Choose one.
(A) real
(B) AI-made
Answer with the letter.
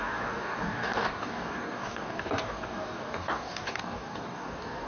B